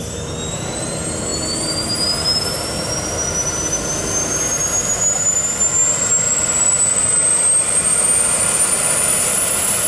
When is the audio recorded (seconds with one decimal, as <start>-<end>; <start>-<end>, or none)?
0.0-9.9